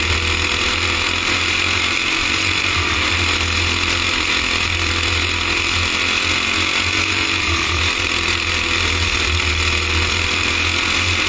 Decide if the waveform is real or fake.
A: real